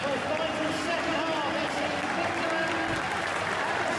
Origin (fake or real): real